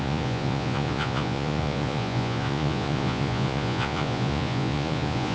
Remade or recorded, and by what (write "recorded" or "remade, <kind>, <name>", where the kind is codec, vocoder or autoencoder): remade, vocoder, Vocos